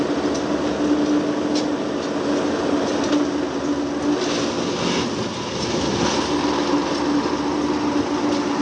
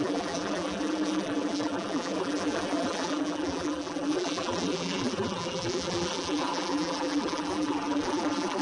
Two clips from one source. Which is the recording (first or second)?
first